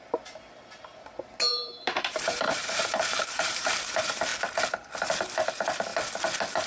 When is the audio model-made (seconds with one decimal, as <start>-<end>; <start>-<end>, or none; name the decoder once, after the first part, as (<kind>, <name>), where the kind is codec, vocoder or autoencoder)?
1.5-3.9 (vocoder, BigVGAN v2)